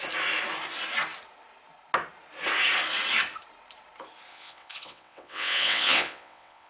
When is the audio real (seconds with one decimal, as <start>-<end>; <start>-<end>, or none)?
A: 0.0-4.3